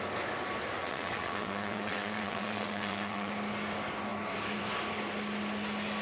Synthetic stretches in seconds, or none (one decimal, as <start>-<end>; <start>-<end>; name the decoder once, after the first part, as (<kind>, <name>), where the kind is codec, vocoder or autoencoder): 0.8-3.3 (vocoder, WaveNeXt)